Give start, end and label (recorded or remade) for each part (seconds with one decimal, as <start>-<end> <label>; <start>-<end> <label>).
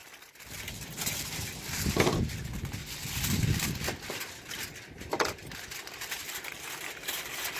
0.0-1.7 remade; 1.7-2.8 recorded; 2.8-7.6 remade